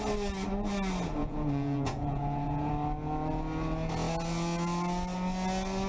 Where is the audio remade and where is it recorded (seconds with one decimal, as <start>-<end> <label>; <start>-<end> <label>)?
0.0-1.2 recorded; 1.2-2.7 remade; 2.7-5.9 recorded